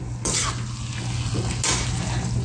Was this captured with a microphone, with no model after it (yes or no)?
yes